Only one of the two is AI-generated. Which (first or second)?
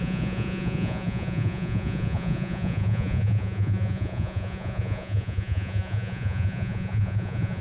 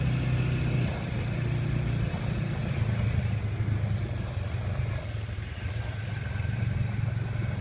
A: first